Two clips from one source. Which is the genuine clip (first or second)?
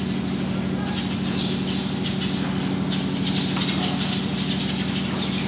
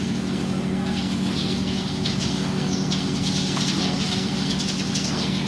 first